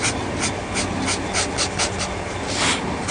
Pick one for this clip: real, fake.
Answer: real